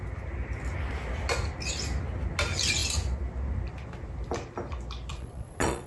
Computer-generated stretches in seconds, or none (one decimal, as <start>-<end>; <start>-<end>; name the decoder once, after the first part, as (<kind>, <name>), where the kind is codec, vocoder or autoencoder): 5.1-5.9 (vocoder, Vocos)

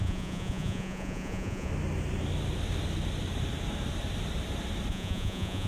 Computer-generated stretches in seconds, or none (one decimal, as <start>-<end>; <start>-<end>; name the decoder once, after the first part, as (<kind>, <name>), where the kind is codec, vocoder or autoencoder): 0.0-1.7 (vocoder, Vocos); 4.9-5.7

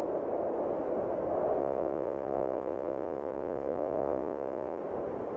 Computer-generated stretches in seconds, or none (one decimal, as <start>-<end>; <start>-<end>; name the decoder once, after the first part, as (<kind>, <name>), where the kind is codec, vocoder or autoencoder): 1.6-4.8 (vocoder, Vocos)